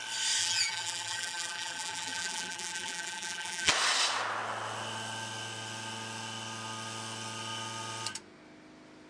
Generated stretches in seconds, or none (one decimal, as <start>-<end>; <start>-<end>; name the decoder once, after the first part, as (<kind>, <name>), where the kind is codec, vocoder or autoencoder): 0.4-3.7 (vocoder, BigVGAN v2)